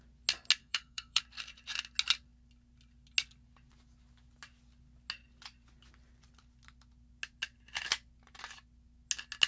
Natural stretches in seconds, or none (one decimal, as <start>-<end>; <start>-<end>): 0.0-0.6; 1.2-9.5